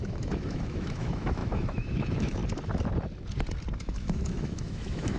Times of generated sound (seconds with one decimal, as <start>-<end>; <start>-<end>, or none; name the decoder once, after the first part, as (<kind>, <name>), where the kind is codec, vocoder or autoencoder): 0.0-2.4 (autoencoder, DAC-VAE); 3.8-5.2